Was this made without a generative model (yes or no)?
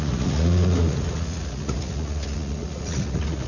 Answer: no